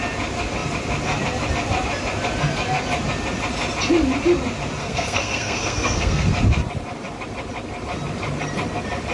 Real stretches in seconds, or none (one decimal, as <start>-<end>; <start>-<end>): 0.0-4.8; 6.3-9.1